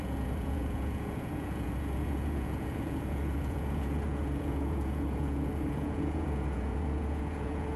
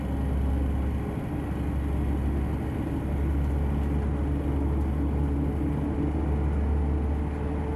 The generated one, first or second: first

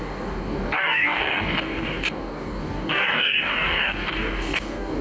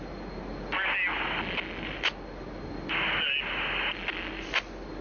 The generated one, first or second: first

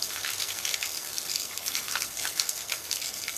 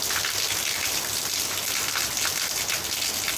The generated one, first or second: first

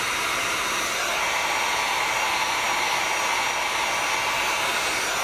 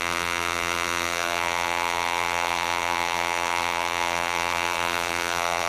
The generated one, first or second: second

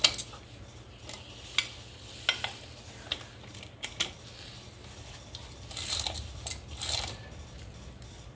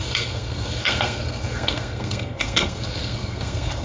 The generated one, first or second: second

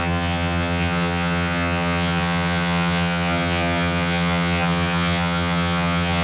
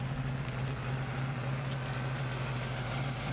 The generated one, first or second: first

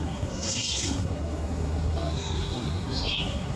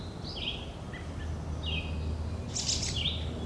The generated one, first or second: first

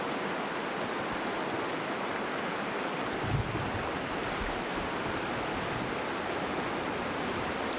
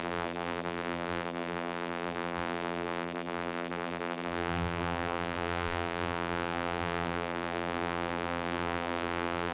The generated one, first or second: second